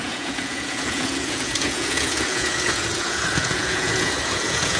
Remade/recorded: remade